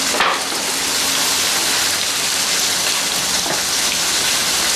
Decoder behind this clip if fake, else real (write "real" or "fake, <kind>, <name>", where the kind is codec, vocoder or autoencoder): real